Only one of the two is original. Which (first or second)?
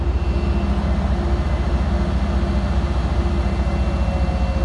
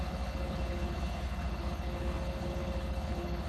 first